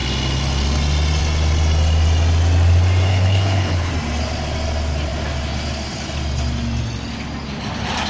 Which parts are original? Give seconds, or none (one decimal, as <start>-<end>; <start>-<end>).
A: 0.0-3.1; 3.9-8.1